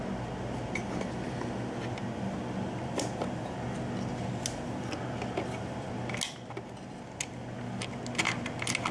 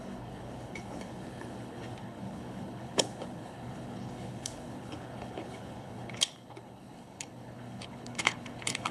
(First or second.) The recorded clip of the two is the first